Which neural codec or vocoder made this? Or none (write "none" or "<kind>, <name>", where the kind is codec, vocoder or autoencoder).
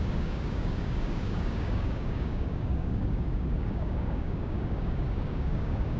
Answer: codec, DAC